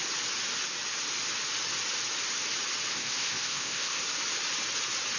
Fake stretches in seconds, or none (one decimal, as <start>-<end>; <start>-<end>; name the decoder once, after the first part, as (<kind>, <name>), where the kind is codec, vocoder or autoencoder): 2.9-4.0 (codec, ZipCodec)